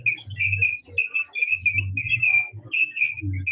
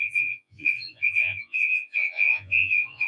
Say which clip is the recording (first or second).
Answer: first